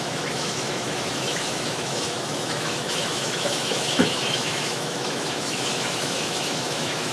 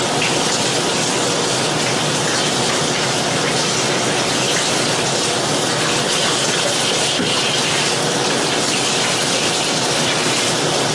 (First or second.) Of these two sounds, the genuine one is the second